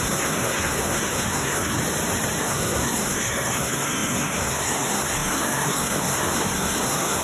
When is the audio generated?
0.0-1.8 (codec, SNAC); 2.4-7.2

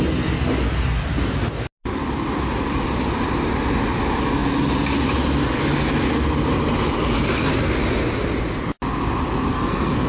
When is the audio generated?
9.5-10.1 (codec, SNAC)